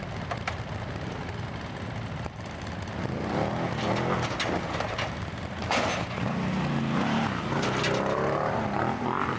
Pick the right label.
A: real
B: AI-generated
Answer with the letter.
A